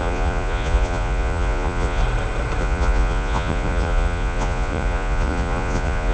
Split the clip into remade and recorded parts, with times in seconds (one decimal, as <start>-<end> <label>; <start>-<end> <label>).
0.0-2.0 remade; 2.0-2.6 recorded; 2.6-6.1 remade